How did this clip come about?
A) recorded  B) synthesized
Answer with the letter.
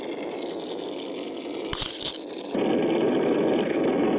A